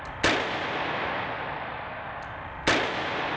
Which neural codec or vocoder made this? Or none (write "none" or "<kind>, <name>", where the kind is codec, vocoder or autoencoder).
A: none